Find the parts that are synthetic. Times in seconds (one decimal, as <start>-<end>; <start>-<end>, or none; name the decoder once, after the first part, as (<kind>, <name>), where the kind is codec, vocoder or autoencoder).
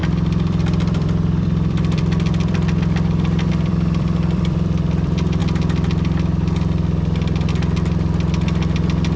0.0-5.4 (vocoder, BigVGAN v2)